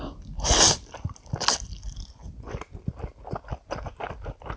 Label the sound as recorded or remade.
recorded